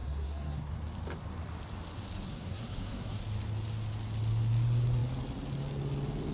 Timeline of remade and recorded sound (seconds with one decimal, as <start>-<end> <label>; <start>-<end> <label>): 0.0-0.7 remade; 0.7-2.3 recorded; 2.3-3.2 remade; 3.2-6.3 recorded